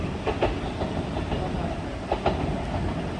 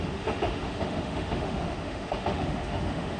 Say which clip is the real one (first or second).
first